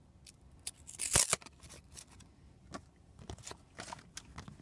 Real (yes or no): yes